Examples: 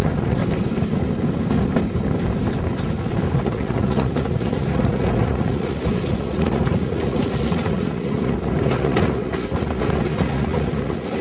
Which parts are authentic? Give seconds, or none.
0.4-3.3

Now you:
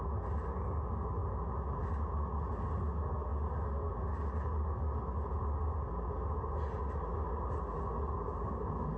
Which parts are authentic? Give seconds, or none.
0.0-9.0

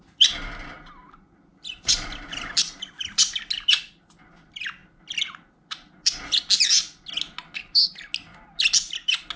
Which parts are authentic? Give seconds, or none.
0.0-1.5; 3.4-9.4